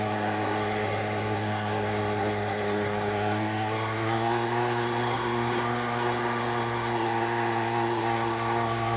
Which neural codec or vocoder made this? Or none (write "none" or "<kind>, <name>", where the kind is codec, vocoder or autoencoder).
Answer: codec, SNAC